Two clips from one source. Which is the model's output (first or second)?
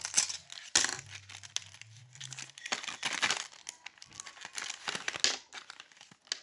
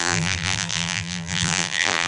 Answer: second